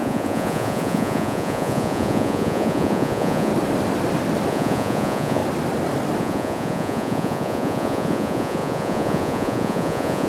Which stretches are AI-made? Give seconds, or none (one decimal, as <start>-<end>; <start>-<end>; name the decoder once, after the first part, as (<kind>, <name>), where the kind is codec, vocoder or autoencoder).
0.0-3.5 (vocoder, Vocos); 4.5-5.4; 6.2-10.3